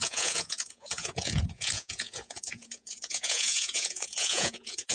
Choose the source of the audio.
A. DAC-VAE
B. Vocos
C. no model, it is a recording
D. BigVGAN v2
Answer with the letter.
B